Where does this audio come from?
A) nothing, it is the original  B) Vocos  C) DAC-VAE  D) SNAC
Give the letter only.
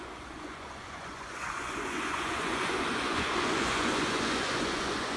B